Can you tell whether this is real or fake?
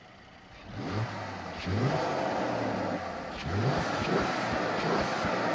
real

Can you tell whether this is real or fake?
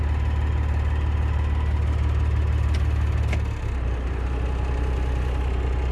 real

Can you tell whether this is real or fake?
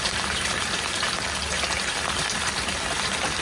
real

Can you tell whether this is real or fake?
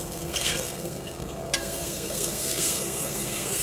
fake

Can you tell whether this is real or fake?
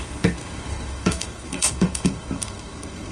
fake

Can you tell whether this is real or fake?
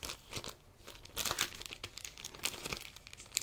real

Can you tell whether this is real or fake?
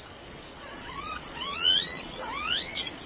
fake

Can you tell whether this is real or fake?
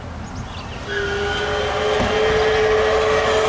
real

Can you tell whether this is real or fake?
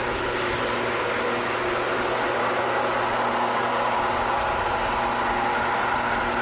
real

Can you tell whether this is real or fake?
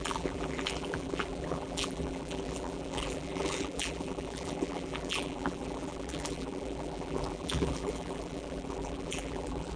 fake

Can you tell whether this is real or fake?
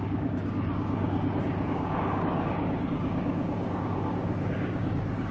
fake